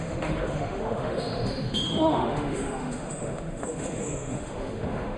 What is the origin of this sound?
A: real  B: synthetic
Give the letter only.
B